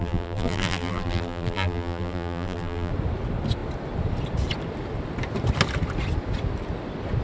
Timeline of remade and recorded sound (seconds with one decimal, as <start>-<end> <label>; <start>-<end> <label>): 0.0-2.9 remade; 2.9-7.2 recorded